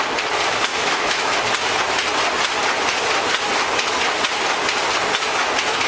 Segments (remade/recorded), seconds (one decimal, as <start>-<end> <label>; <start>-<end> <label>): 0.0-0.7 recorded; 0.7-1.4 remade; 1.4-5.9 recorded

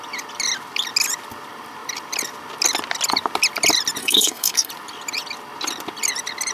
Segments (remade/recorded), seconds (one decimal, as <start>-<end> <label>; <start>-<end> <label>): 0.0-4.0 recorded; 4.0-4.7 remade; 4.7-6.5 recorded

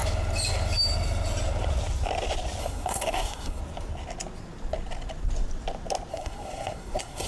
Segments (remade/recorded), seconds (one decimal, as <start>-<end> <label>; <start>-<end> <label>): 0.0-2.6 recorded; 2.6-3.6 remade; 3.6-6.1 recorded; 6.1-7.3 remade